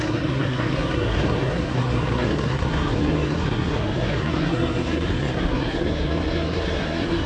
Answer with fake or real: fake